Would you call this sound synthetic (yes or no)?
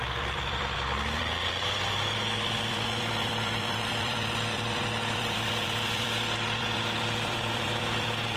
yes